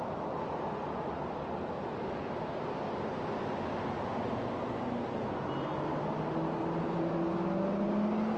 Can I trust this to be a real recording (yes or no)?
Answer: yes